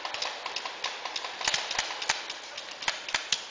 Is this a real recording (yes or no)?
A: yes